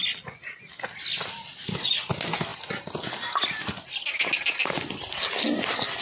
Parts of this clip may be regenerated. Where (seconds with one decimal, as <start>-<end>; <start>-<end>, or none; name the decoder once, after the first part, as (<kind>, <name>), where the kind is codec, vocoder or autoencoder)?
none